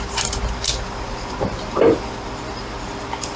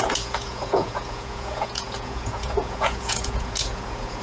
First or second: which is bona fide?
first